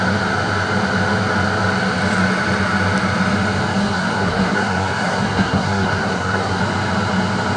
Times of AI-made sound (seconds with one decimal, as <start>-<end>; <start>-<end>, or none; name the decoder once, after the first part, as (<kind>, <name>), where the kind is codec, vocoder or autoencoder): 3.8-6.6 (codec, SNAC)